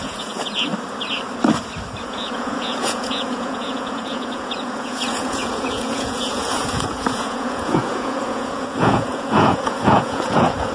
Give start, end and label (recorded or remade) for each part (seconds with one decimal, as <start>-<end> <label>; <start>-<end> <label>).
0.0-0.7 remade; 0.7-2.0 recorded; 2.0-10.7 remade